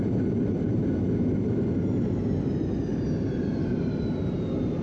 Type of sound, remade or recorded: recorded